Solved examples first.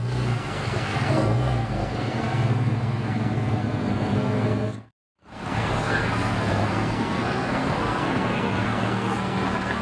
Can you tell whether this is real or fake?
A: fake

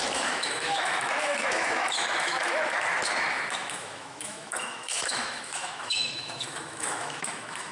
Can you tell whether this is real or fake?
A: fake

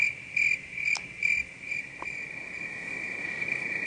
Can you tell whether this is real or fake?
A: real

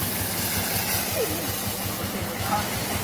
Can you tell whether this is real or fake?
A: real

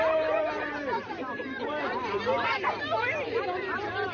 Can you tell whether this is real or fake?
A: fake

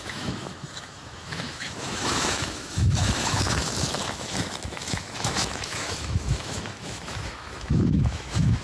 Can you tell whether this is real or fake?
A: fake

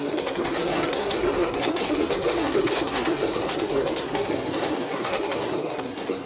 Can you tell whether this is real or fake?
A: fake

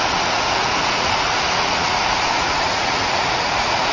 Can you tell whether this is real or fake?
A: fake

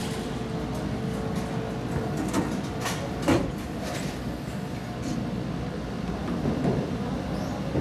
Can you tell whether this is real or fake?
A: real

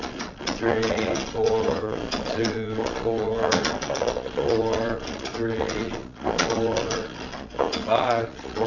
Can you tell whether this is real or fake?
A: fake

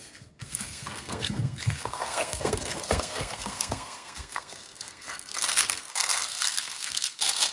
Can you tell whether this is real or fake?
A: fake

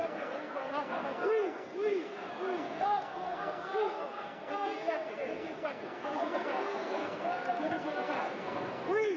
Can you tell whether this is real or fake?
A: fake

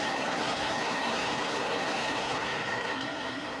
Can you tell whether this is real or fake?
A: fake